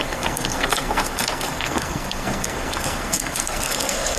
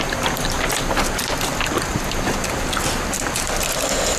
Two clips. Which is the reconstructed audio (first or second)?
first